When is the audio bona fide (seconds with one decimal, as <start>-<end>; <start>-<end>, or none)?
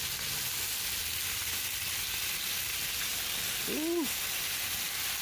0.0-5.2